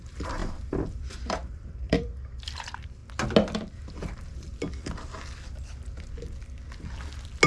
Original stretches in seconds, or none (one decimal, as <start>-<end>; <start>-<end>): 3.0-3.7; 4.5-7.5